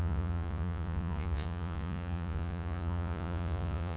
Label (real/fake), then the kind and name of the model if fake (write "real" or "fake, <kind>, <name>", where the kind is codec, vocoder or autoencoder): fake, vocoder, Vocos